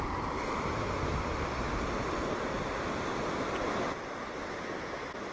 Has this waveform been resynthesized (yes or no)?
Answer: no